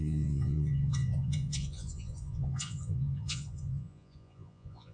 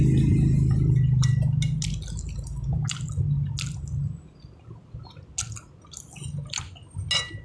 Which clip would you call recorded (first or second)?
second